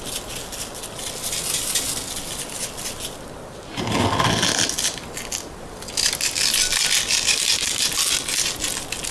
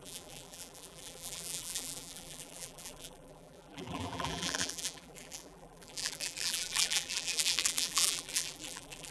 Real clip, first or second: first